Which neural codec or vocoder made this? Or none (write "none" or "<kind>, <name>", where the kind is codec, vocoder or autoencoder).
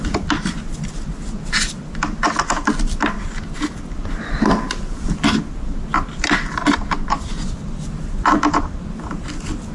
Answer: none